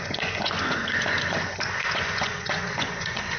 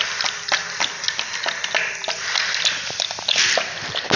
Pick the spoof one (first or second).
first